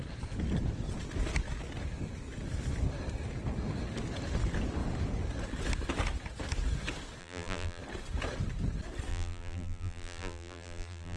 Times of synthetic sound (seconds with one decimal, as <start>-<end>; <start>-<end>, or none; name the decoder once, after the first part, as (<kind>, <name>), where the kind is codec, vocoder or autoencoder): 7.2-7.8 (vocoder, BigVGAN v2); 9.1-11.2